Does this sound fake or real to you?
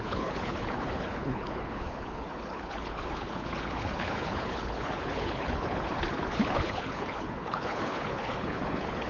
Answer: fake